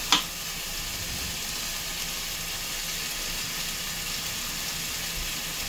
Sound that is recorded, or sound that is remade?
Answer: recorded